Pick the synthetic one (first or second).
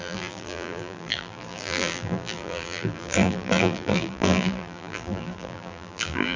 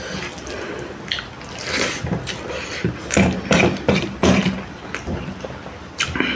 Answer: first